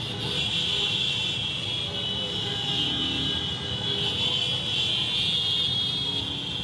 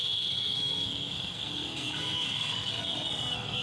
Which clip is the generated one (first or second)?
second